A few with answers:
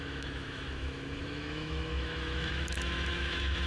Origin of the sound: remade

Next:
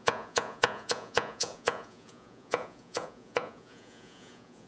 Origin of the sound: remade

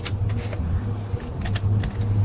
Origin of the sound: recorded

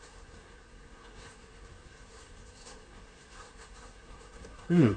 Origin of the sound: remade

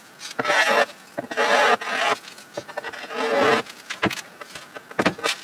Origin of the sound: recorded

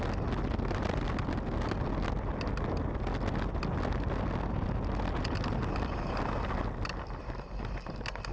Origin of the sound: recorded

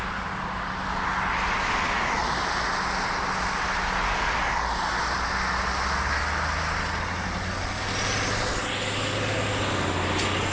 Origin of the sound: recorded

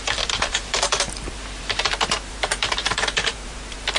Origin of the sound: remade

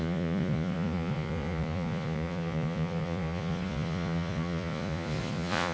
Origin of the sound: remade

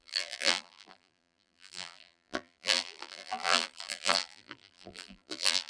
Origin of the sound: remade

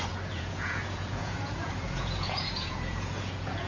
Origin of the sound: remade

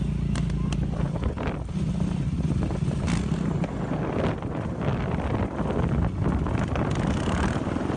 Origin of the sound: recorded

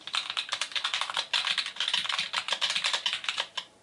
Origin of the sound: recorded